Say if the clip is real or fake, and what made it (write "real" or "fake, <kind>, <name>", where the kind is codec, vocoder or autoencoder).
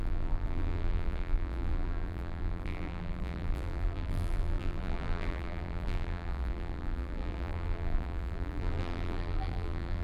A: fake, vocoder, BigVGAN v2